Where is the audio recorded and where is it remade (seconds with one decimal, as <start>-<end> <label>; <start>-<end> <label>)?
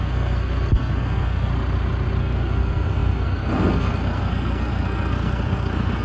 0.0-1.5 remade; 1.5-2.2 recorded; 2.2-6.0 remade